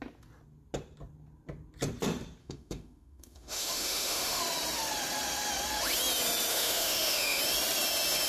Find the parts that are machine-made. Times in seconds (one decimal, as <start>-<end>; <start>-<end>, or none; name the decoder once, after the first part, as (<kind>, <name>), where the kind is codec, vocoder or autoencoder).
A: 2.4-4.4 (autoencoder, DAC-VAE); 6.5-7.4